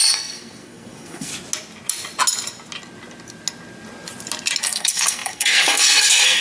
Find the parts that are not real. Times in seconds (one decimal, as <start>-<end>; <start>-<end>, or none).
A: 0.0-1.3; 4.6-6.4